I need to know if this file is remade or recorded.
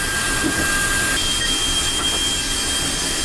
recorded